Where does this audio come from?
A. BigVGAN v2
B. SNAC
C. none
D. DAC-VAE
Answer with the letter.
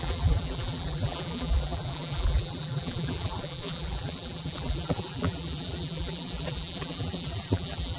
A